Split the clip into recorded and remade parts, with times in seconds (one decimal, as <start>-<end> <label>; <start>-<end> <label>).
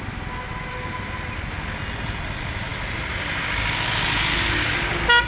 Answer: 0.0-5.3 recorded